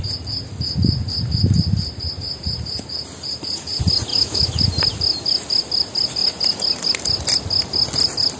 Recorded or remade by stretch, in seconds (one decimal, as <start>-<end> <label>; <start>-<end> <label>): 0.0-4.1 recorded; 4.1-4.6 remade; 4.6-8.4 recorded